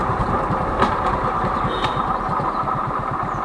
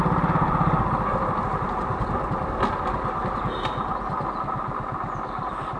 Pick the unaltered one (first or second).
second